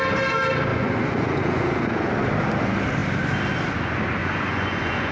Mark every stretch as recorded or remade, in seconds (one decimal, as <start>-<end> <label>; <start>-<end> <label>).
0.0-0.7 recorded; 0.7-2.1 remade; 2.1-4.2 recorded; 4.2-5.1 remade